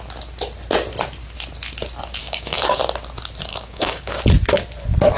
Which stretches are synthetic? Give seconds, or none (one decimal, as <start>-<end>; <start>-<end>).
2.2-2.8; 3.5-4.2